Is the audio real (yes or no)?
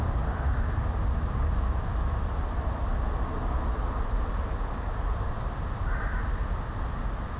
yes